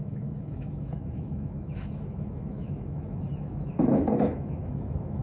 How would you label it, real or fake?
fake